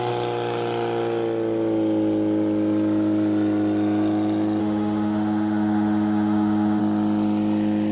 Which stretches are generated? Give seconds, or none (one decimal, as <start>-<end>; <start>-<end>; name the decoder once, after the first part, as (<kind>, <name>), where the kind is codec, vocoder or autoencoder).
4.6-6.8 (autoencoder, DAC-VAE)